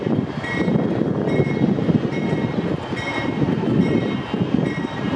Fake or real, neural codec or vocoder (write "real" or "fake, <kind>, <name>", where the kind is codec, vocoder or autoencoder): real